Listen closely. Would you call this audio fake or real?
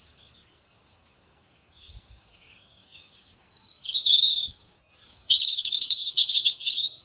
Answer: fake